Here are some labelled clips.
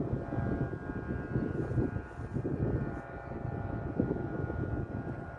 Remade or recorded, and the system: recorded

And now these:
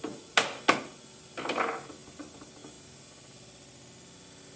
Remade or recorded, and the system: recorded